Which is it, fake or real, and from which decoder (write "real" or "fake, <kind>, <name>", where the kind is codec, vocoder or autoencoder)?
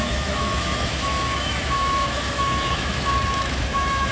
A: fake, autoencoder, DAC-VAE